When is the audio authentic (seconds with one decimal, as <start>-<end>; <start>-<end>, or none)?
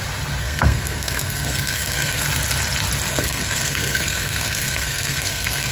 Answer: 0.0-0.4; 2.2-3.1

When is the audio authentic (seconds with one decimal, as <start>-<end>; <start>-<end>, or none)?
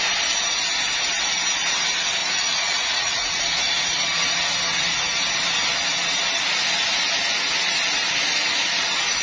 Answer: 0.0-2.2; 3.4-9.2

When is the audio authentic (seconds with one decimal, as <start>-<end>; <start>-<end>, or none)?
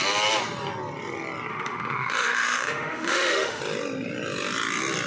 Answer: 0.0-1.5; 3.6-5.1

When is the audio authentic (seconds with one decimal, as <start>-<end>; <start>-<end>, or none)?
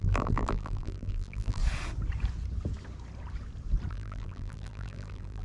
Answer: 1.6-3.9